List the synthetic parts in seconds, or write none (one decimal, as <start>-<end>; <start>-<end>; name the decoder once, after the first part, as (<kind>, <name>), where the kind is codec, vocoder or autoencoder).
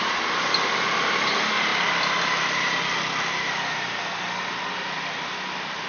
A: none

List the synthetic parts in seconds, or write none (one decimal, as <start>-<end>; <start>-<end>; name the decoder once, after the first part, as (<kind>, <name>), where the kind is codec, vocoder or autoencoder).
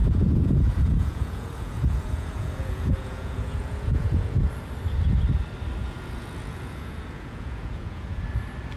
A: 0.0-4.5 (vocoder, Vocos); 5.8-8.2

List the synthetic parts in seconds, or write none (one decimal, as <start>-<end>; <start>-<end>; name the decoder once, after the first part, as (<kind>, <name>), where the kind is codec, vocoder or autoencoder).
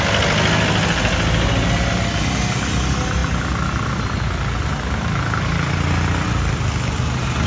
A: none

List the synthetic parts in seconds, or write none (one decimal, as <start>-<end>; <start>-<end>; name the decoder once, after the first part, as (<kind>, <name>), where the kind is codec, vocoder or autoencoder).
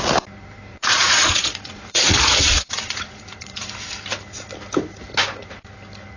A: 0.7-3.7 (vocoder, Vocos)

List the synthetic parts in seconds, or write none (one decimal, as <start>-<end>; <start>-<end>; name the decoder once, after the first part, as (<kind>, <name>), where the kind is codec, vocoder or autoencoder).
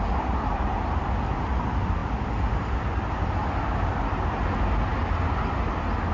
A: none